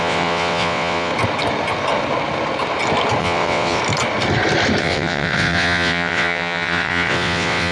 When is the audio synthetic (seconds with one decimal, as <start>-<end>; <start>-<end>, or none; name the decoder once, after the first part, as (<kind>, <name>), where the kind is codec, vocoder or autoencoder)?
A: 0.0-1.1 (vocoder, WaveNeXt); 3.2-3.8; 4.8-7.7